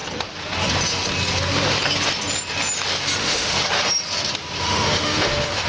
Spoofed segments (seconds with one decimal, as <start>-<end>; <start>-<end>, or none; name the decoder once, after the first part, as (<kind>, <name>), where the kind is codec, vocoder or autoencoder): 3.2-3.6 (autoencoder, DAC-VAE); 4.6-5.7